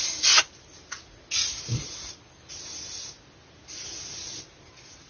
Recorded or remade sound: recorded